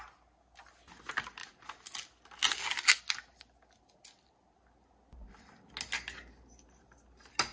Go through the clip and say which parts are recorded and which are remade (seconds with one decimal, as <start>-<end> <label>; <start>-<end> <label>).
0.0-7.5 recorded